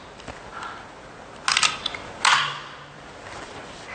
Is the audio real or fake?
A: real